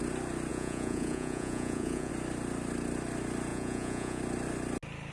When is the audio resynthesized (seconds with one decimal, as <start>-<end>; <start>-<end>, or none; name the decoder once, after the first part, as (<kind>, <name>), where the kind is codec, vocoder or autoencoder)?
0.5-2.1 (vocoder, Vocos); 3.5-4.2